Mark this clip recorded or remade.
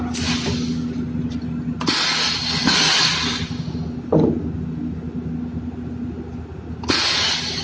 recorded